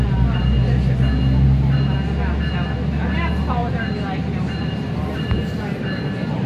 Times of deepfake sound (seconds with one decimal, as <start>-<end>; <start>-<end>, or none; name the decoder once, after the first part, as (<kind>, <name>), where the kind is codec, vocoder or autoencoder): 3.6-5.0 (vocoder, BigVGAN v2)